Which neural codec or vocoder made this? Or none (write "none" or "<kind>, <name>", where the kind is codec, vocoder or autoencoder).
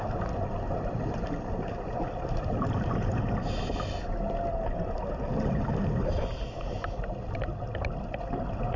none